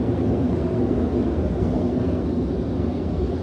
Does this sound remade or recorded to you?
remade